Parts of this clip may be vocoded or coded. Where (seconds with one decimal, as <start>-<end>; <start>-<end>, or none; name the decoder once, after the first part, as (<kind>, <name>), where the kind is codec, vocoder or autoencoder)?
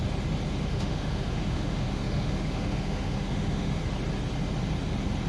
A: 0.6-3.8 (autoencoder, DAC-VAE)